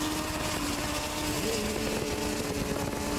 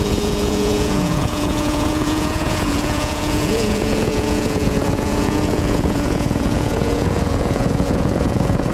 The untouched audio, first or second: first